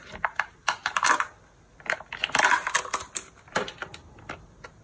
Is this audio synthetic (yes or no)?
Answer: no